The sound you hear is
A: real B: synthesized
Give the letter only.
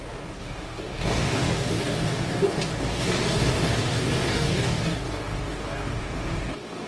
B